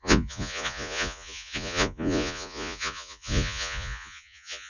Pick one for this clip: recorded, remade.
remade